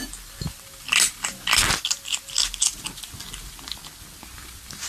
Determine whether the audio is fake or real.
real